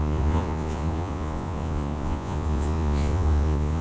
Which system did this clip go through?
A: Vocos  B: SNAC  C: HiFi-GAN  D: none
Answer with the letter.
A